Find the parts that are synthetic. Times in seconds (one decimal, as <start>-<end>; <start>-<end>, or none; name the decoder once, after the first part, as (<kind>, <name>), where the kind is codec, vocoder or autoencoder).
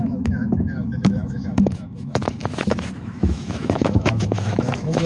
0.0-5.1 (autoencoder, DAC-VAE)